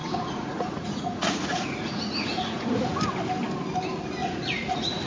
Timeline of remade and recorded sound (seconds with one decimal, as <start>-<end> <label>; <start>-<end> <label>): 0.0-3.0 remade; 3.0-4.2 recorded; 4.2-5.1 remade